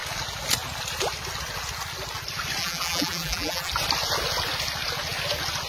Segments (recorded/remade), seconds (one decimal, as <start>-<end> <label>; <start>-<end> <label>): 0.0-2.6 recorded; 2.6-3.7 remade; 3.7-5.7 recorded